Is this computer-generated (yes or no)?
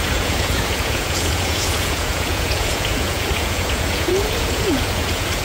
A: yes